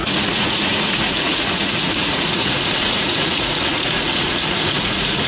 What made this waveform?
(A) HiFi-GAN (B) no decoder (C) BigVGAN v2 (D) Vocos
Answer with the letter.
D